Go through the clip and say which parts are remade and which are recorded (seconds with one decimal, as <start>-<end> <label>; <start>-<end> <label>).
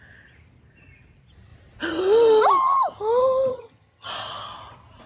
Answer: 0.0-3.5 recorded; 3.5-4.1 remade; 4.1-5.1 recorded